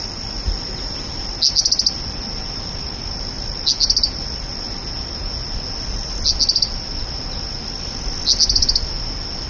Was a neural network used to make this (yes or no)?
no